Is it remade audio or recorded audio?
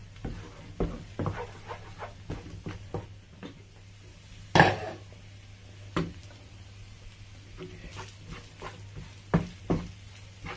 recorded